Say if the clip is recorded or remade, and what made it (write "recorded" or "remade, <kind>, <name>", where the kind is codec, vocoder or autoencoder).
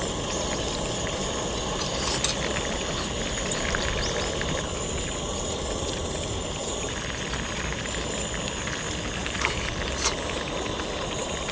recorded